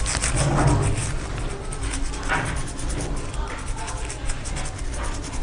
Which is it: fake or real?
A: real